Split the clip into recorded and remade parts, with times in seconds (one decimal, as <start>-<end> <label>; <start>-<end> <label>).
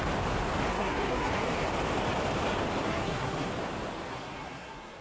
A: 0.0-0.7 recorded; 0.7-1.3 remade; 1.3-2.8 recorded; 2.8-3.5 remade; 3.5-4.1 recorded; 4.1-5.0 remade